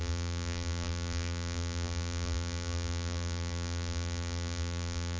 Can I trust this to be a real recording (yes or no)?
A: no